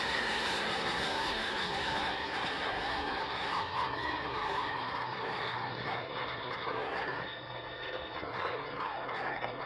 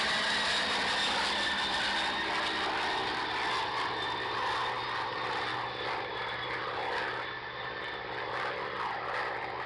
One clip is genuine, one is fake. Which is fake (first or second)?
first